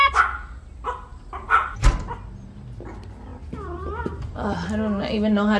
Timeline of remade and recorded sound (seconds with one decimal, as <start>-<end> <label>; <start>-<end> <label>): 0.0-5.6 recorded